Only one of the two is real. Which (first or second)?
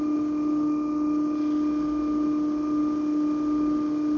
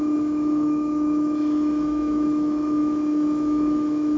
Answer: first